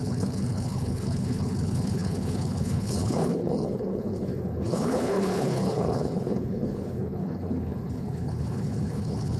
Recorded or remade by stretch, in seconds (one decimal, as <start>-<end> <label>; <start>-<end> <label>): 0.0-9.4 remade